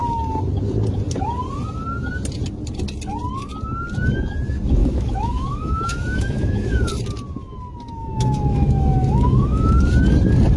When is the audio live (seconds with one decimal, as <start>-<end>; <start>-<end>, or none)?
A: 0.0-4.8; 6.9-8.0; 9.8-10.6